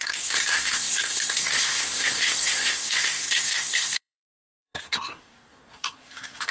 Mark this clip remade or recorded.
remade